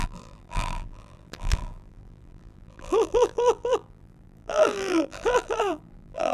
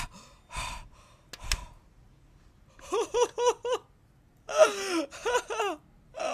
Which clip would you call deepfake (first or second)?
first